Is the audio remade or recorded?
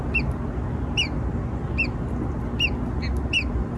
recorded